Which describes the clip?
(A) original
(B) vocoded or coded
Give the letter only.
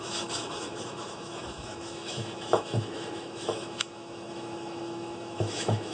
B